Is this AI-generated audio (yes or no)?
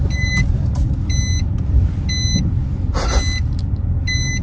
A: no